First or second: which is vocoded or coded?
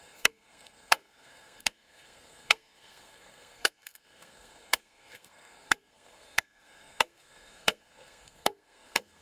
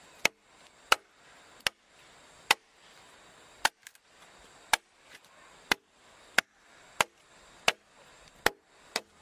first